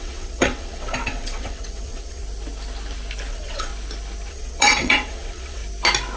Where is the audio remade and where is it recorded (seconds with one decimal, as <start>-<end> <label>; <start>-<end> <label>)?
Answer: 0.0-2.2 remade; 2.2-3.3 recorded; 3.3-3.7 remade; 3.7-4.3 recorded; 4.3-5.6 remade; 5.6-6.2 recorded